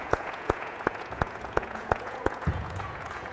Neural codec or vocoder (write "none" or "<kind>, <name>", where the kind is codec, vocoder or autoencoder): vocoder, Vocos